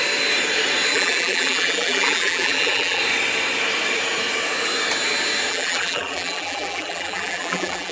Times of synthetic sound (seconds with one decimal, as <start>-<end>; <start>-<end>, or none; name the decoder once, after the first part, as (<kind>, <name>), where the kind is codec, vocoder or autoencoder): 0.9-3.0 (vocoder, BigVGAN v2); 5.5-7.9

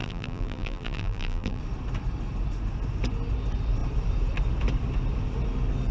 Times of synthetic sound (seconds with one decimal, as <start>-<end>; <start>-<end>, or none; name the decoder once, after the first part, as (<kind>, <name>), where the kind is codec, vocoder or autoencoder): 0.0-1.6 (vocoder, BigVGAN v2)